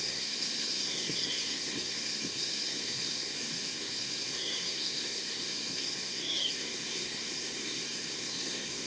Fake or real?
fake